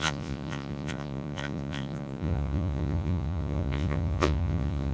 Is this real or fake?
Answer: fake